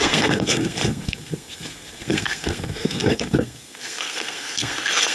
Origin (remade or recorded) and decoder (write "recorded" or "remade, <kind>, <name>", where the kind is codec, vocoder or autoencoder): remade, codec, SNAC